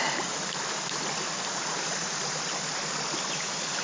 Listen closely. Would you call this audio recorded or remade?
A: recorded